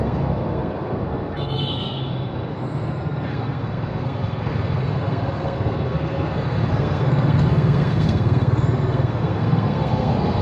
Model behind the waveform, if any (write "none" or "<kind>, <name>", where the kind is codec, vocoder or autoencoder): codec, SNAC